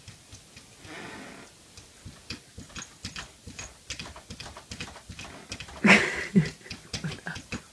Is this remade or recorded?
recorded